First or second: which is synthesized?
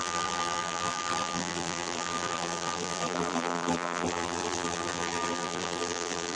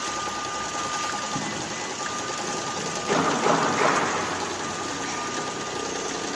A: first